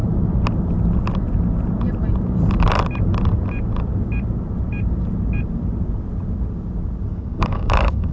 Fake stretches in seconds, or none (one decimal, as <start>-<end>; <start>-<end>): 7.1-8.1